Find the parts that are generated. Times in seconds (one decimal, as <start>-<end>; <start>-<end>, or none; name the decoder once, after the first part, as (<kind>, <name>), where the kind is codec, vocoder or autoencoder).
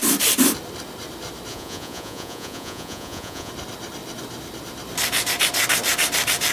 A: 1.5-3.5 (vocoder, Vocos)